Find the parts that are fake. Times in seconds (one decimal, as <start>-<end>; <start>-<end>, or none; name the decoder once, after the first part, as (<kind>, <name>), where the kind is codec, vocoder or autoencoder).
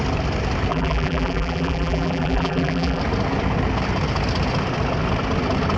0.7-3.0 (vocoder, BigVGAN v2)